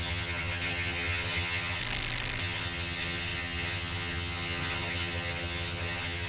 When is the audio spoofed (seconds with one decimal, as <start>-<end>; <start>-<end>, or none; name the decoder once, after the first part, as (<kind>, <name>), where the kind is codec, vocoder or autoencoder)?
0.0-1.8 (vocoder, HiFi-GAN); 2.4-6.3